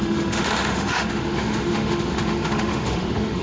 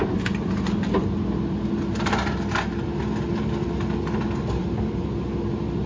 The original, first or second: second